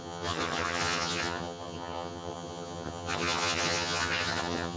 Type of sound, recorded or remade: remade